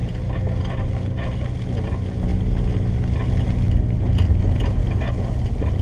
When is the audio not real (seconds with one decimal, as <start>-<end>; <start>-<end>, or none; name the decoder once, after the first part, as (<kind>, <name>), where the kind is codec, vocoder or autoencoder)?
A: none